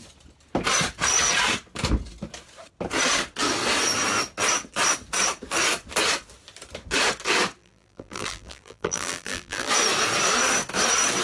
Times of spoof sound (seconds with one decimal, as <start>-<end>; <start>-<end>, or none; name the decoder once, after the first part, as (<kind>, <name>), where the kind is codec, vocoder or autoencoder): 7.6-9.7 (vocoder, BigVGAN v2)

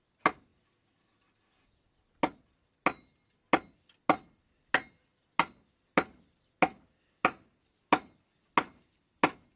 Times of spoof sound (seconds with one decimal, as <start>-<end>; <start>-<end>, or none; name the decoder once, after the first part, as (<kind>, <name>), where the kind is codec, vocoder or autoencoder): none

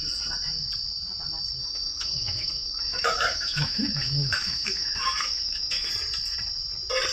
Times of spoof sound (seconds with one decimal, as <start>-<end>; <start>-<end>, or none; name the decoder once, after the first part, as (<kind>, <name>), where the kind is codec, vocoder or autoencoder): 1.6-5.9 (autoencoder, DAC-VAE)

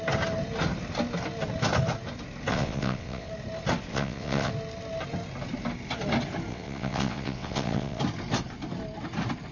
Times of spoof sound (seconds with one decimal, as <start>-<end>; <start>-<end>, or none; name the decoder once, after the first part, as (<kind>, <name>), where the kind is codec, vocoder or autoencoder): 2.5-3.3 (vocoder, WaveNeXt); 3.9-4.5; 6.5-8.0

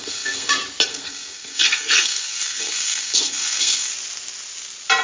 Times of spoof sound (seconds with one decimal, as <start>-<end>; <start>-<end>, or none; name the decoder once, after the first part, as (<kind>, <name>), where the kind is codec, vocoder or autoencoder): 0.0-0.5 (codec, SNAC); 0.9-3.9